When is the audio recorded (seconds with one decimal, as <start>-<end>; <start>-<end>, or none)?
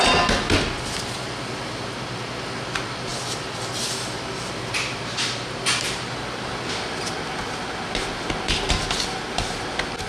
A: 0.0-10.1